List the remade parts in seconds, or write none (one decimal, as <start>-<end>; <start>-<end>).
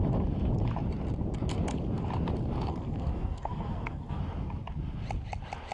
2.7-4.2